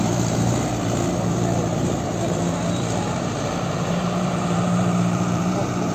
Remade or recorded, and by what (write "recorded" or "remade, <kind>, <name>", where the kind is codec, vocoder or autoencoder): remade, vocoder, BigVGAN v2